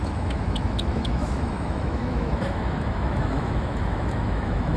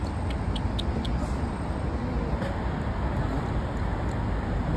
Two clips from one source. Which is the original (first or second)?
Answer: second